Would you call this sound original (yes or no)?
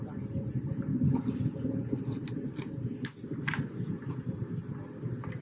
yes